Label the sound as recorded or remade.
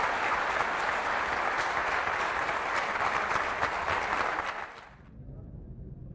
recorded